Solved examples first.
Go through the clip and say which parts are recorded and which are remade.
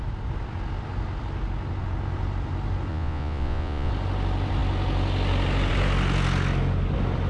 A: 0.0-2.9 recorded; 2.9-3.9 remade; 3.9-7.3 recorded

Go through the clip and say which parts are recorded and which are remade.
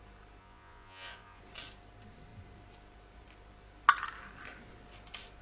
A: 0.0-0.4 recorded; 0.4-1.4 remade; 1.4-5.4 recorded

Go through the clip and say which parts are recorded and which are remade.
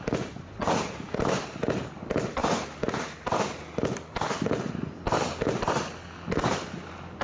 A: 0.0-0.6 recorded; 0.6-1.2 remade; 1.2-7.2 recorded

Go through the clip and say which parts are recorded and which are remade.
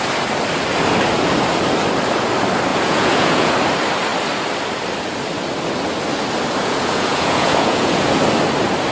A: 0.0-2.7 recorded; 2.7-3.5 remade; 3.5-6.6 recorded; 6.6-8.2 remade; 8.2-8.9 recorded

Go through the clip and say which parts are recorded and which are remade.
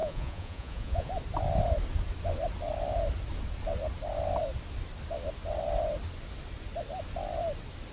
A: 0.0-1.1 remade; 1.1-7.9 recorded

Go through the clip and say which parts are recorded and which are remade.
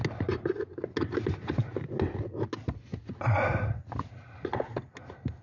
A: 0.0-5.4 recorded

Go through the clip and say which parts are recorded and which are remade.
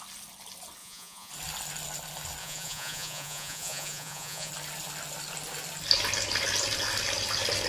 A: 0.0-0.8 recorded; 0.8-1.3 remade; 1.3-2.4 recorded; 2.4-4.5 remade; 4.5-7.7 recorded